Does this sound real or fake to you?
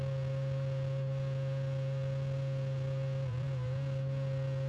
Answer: real